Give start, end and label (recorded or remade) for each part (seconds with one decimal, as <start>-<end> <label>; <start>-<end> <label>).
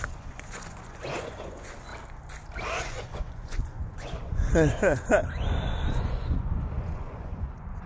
0.0-1.9 remade; 1.9-2.8 recorded; 2.8-7.9 remade